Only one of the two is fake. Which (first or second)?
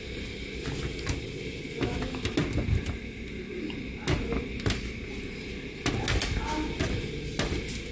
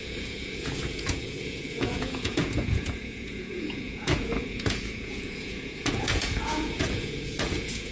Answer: second